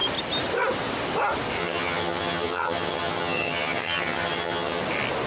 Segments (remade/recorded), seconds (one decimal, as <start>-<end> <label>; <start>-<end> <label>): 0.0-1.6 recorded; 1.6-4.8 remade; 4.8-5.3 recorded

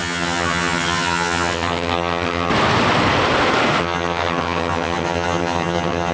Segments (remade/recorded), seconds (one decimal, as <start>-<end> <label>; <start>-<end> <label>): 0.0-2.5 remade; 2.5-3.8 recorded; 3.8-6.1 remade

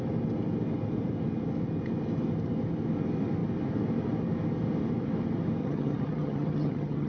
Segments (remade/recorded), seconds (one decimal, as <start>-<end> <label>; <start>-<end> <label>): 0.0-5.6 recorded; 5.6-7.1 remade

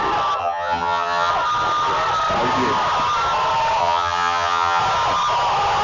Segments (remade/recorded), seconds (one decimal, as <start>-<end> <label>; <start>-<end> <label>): 0.0-0.4 recorded; 0.4-1.3 remade; 1.3-3.8 recorded; 3.8-4.8 remade; 4.8-5.8 recorded

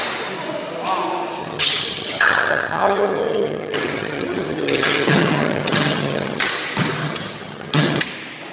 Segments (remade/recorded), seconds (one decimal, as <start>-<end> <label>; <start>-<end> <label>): 0.0-1.4 recorded; 1.4-6.5 remade; 6.5-7.0 recorded; 7.0-8.1 remade; 8.1-8.5 recorded

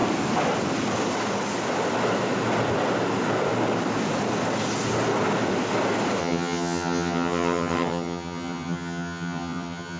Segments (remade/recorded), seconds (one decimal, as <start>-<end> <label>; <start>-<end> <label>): 0.0-6.2 recorded; 6.2-10.0 remade

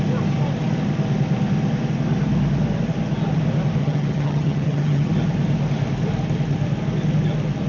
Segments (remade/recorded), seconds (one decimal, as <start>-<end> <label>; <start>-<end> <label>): 0.0-3.8 recorded; 3.8-5.1 remade; 5.1-7.7 recorded

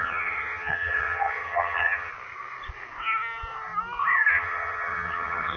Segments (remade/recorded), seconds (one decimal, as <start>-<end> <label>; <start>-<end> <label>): 0.0-2.1 remade; 2.1-4.3 recorded; 4.3-5.6 remade